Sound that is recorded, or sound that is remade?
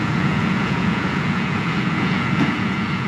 remade